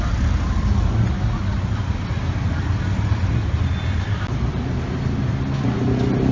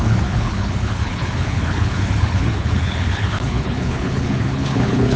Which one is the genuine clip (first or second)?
first